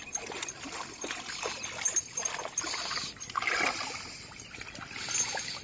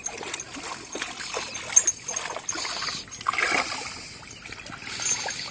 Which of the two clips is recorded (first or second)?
second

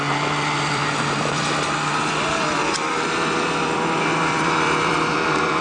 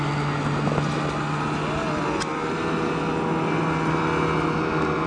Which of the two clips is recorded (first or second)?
second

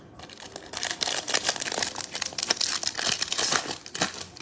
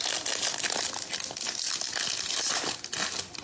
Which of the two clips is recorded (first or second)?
second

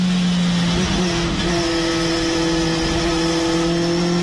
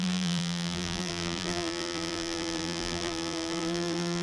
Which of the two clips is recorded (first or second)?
first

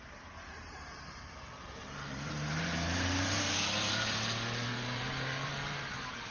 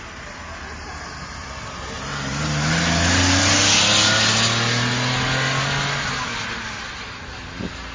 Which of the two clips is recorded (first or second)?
second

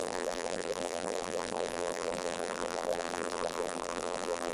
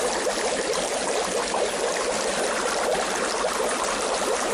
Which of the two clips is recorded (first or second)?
second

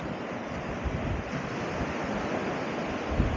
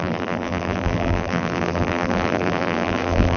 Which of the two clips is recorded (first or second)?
first